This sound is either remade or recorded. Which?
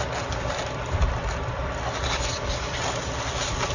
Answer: remade